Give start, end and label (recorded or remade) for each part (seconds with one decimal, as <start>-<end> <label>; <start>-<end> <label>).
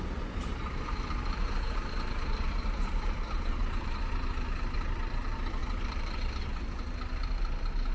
0.0-0.5 recorded; 0.5-4.1 remade; 4.1-5.6 recorded; 5.6-6.4 remade; 6.4-7.9 recorded